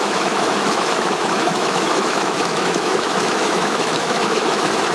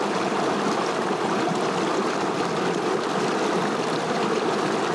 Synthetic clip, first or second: first